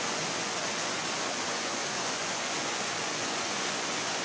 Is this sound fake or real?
fake